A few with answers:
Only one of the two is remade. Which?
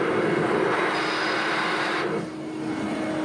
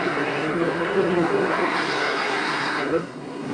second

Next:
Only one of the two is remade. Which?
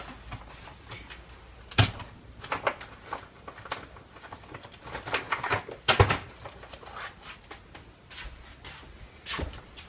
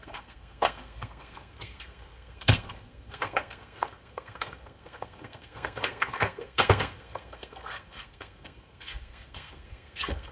second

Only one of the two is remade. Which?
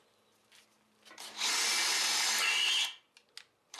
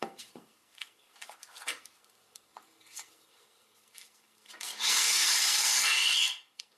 second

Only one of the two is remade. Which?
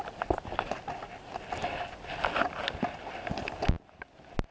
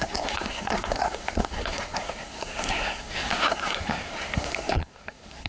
second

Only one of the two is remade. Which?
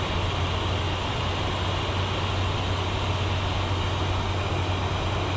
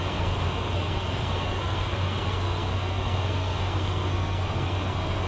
second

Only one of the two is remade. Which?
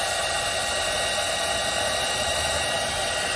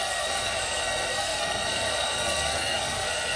second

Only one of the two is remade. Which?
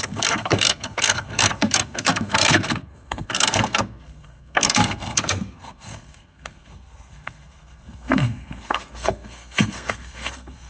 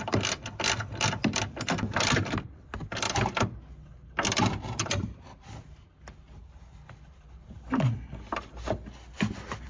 first